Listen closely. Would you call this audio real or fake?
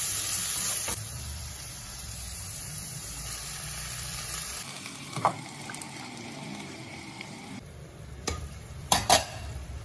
fake